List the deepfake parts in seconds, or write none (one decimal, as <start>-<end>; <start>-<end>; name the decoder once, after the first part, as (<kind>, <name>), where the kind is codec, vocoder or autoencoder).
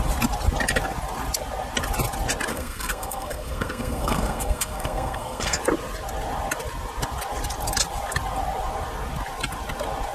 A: 2.5-5.6 (codec, SNAC)